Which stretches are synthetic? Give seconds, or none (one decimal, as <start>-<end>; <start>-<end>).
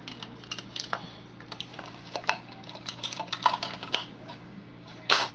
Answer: 1.7-5.3